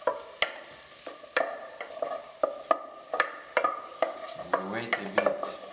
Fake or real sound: real